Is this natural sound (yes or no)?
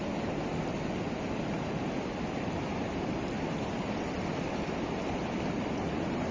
yes